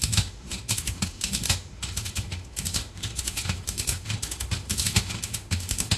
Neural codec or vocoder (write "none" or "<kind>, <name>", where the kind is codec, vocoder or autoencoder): autoencoder, DAC-VAE